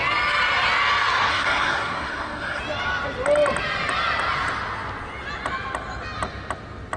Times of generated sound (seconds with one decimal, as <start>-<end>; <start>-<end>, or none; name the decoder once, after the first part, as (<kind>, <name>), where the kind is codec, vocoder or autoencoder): 1.3-2.6 (codec, SNAC)